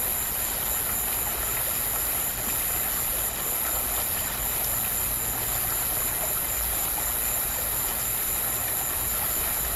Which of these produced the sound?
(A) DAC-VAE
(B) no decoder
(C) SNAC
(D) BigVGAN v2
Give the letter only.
B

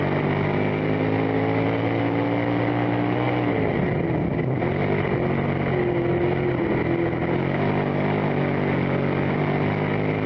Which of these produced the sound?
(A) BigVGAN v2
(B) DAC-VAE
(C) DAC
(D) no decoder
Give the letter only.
D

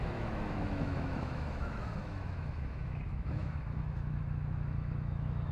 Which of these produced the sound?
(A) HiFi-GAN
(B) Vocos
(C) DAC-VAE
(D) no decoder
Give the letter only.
C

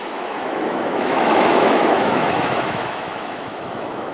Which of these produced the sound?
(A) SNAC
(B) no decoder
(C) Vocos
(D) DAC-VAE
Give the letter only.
D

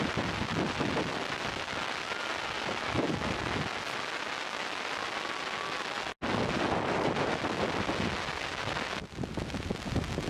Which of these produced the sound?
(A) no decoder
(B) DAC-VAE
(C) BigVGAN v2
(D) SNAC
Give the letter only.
A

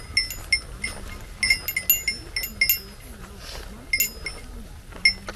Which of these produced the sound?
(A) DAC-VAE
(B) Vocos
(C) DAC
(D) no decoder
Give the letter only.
D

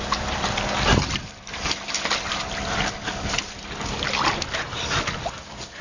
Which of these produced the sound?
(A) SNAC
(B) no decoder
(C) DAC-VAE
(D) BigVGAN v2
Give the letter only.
B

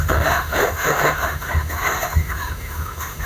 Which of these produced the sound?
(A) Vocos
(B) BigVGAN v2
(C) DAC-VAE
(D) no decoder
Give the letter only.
C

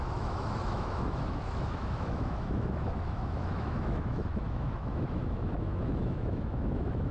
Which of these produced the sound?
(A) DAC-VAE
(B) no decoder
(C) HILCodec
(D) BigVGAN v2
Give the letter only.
A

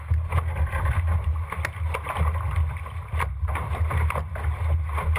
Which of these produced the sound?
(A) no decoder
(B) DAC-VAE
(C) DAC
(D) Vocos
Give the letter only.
A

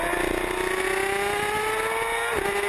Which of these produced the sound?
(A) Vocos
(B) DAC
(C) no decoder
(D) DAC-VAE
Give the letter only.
C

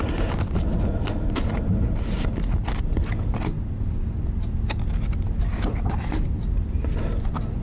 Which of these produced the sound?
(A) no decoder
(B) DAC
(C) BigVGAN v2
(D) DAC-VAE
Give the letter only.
A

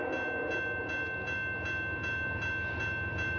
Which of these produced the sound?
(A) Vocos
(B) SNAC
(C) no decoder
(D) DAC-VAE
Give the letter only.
C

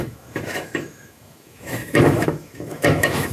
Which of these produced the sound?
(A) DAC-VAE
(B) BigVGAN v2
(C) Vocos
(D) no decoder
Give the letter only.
A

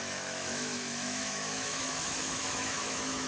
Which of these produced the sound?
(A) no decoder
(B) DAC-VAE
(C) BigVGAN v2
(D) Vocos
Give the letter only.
B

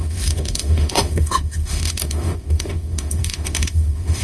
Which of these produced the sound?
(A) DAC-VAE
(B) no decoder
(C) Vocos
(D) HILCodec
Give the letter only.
A